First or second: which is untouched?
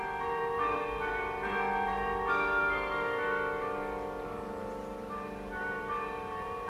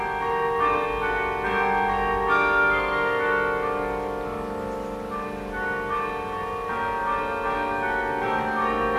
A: second